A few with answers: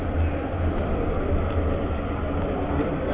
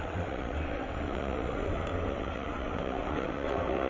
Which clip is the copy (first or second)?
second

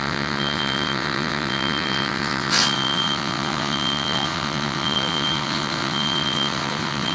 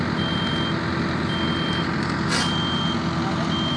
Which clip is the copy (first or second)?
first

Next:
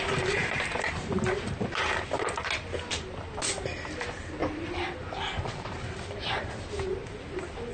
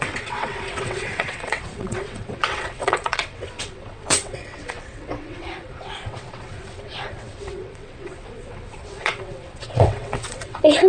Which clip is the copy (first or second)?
second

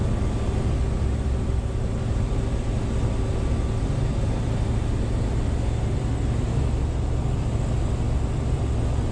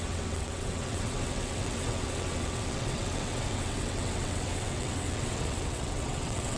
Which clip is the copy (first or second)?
second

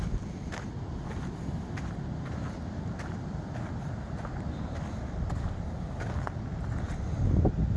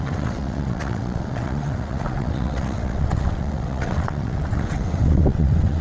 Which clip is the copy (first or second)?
second